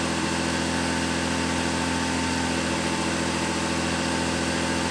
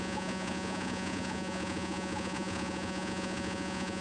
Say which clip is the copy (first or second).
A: second